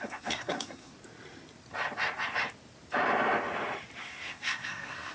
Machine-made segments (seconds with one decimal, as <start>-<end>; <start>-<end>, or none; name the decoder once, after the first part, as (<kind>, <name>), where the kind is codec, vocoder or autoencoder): 0.0-0.9 (codec, SNAC); 4.0-5.1